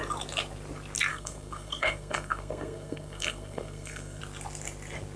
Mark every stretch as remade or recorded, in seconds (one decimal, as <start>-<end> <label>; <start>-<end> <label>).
0.0-1.1 recorded; 1.1-4.2 remade; 4.2-5.2 recorded